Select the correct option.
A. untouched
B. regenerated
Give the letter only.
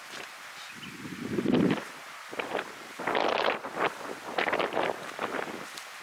A